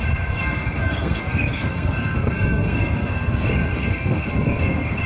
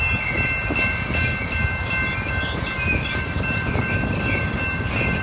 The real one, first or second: second